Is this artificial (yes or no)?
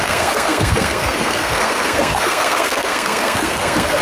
yes